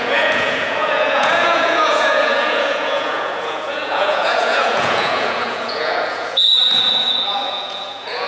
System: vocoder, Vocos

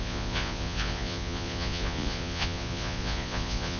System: vocoder, Vocos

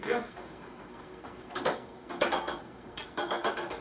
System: codec, SNAC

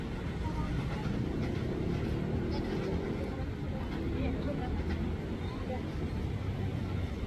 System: none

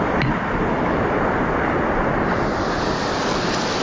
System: none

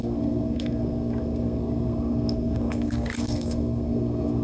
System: codec, SNAC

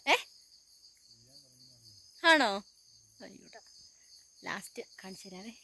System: none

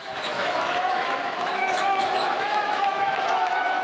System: autoencoder, DAC-VAE